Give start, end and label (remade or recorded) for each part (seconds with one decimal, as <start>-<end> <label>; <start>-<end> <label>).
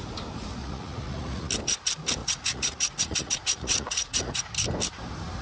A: 0.0-0.6 recorded; 0.6-1.5 remade; 1.5-2.2 recorded; 2.2-4.4 remade; 4.4-5.4 recorded